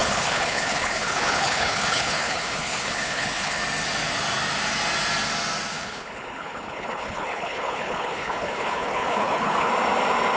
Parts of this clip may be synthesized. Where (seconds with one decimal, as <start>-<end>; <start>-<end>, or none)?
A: 0.0-3.6; 5.7-9.7